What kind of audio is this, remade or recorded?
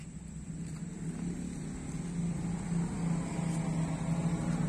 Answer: recorded